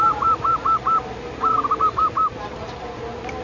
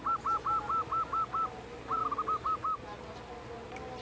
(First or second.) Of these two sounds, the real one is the second